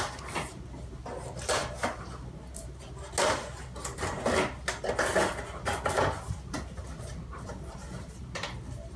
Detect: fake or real real